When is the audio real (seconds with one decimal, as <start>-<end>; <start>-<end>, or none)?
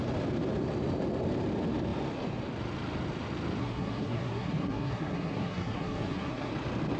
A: 0.0-3.6; 6.5-7.0